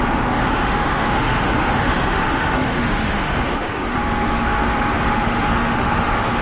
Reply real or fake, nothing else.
fake